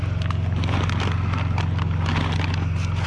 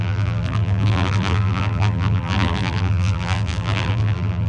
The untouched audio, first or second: first